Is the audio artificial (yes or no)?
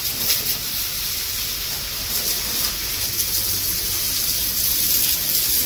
no